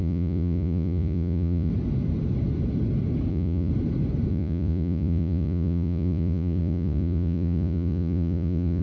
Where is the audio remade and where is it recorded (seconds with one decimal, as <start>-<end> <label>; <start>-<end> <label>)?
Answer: 0.0-1.7 remade; 1.7-3.3 recorded; 3.3-3.7 remade; 3.7-4.3 recorded; 4.3-8.8 remade